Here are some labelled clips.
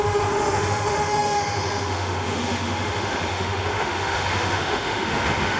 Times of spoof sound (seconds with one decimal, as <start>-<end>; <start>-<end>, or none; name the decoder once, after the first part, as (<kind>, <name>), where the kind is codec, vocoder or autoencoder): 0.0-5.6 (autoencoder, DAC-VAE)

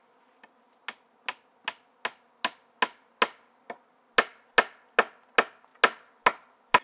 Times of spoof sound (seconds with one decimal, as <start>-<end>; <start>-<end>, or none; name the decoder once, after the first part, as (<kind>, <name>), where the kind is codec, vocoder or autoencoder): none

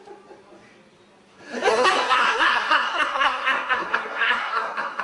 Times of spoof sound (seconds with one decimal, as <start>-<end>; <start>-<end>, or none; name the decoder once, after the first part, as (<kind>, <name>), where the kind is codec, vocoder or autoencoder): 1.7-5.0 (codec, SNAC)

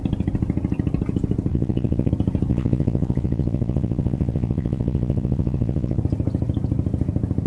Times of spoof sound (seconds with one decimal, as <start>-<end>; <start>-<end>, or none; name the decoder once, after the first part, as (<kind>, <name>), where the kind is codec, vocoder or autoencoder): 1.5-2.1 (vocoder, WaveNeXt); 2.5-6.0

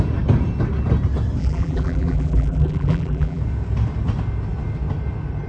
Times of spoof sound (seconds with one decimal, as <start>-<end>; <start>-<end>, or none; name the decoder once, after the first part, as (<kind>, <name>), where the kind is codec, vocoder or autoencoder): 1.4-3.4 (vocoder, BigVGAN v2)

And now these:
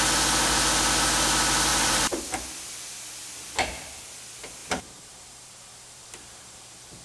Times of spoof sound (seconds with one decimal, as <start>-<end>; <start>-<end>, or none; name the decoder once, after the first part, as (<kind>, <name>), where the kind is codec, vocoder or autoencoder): 1.7-2.3 (vocoder, BigVGAN v2); 3.2-3.7; 4.6-6.6

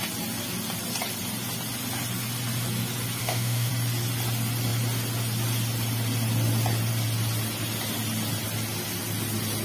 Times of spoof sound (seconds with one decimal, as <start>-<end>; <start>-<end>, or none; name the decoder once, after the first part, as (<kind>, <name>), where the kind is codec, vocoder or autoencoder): 3.2-3.7 (autoencoder, DAC-VAE)

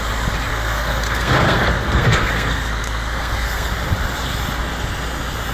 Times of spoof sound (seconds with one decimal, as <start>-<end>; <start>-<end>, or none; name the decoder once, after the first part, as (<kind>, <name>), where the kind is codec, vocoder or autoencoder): 0.5-3.7 (codec, SNAC)